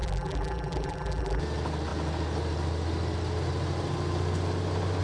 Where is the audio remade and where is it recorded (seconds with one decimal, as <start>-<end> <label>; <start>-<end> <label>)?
0.0-1.4 remade; 1.4-5.0 recorded